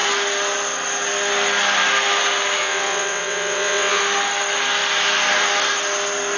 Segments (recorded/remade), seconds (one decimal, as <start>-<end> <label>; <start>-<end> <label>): 0.0-2.6 recorded; 2.6-4.0 remade; 4.0-6.4 recorded

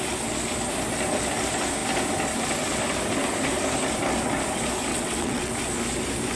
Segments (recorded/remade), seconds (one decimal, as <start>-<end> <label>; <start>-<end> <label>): 0.0-4.9 recorded; 4.9-5.5 remade; 5.5-6.4 recorded

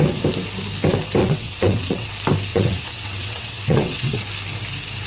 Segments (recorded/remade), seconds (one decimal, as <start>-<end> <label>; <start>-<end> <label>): 0.0-1.2 recorded; 1.2-2.1 remade; 2.1-2.5 recorded; 2.5-4.2 remade; 4.2-5.1 recorded

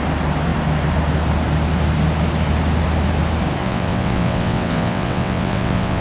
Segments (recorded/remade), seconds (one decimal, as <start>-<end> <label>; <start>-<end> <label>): 0.0-3.6 recorded; 3.6-6.0 remade

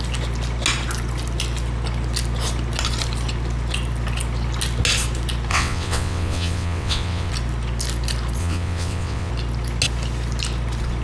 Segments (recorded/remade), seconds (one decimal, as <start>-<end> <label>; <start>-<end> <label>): 0.0-5.5 recorded; 5.5-7.3 remade; 7.3-8.4 recorded; 8.4-9.3 remade; 9.3-11.0 recorded